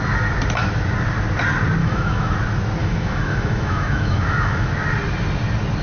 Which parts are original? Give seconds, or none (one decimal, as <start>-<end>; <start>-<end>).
0.0-1.8; 2.3-2.8; 4.7-5.8